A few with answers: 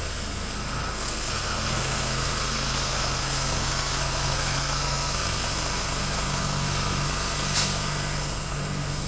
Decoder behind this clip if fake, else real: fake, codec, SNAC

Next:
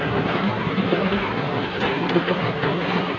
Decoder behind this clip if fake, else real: fake, codec, SNAC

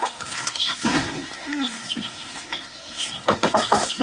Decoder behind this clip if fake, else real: fake, codec, SNAC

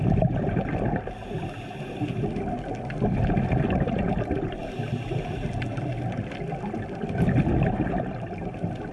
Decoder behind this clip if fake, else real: real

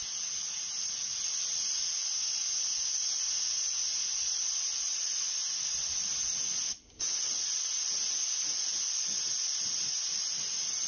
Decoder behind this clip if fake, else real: real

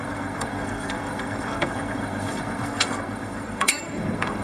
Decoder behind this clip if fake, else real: fake, codec, SNAC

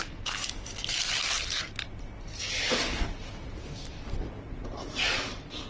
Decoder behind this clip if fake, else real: real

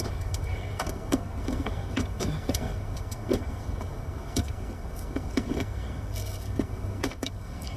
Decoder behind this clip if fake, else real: fake, codec, SNAC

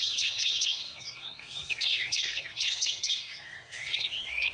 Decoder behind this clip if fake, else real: fake, codec, SNAC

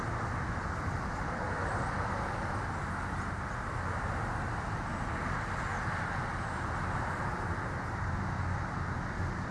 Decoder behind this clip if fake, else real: real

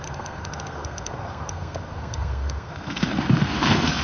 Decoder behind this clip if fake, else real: fake, codec, SNAC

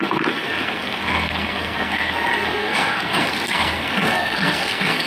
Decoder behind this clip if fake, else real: fake, codec, SNAC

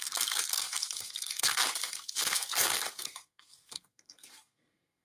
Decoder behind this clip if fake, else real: fake, codec, SNAC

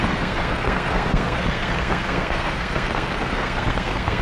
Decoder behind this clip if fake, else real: fake, codec, SNAC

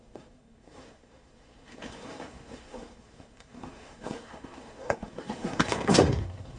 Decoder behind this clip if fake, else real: fake, codec, SNAC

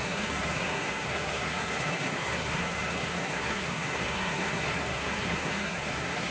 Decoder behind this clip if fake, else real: fake, codec, SNAC